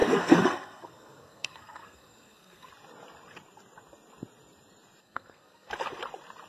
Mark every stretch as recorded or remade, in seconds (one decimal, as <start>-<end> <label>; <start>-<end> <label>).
0.0-2.7 remade; 2.7-5.0 recorded; 5.0-5.7 remade; 5.7-6.5 recorded